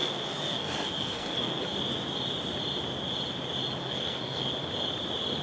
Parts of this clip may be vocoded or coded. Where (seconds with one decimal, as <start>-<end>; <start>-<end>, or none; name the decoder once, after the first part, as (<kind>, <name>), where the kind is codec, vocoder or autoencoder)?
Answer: 0.0-1.6 (codec, SNAC); 3.8-4.5